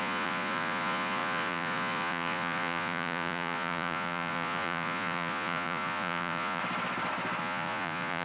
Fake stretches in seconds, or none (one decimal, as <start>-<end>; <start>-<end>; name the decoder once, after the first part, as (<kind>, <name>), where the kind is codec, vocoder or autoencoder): 0.0-6.6 (vocoder, Vocos); 7.4-8.2